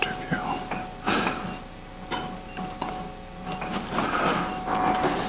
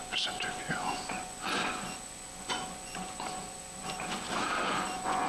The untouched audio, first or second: first